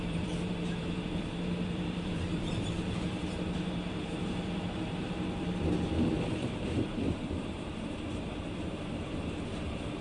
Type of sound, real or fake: fake